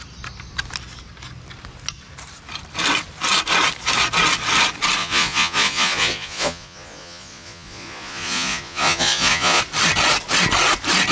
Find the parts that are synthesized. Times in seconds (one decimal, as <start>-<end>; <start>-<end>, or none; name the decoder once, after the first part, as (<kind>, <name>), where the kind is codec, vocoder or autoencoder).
5.0-9.6 (vocoder, Vocos)

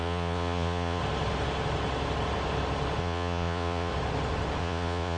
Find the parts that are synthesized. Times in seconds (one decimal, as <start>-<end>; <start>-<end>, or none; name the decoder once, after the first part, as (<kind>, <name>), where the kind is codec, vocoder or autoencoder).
0.0-1.0 (vocoder, Vocos); 3.0-3.9; 4.6-5.2